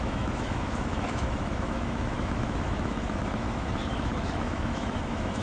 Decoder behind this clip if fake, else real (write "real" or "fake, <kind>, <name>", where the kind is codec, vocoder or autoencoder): fake, autoencoder, DAC-VAE